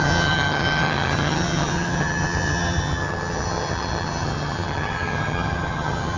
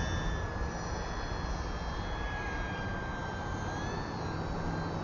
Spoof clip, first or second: first